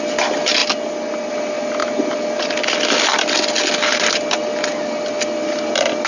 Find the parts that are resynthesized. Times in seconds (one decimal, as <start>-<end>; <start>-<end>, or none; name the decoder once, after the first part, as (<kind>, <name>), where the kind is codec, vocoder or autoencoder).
none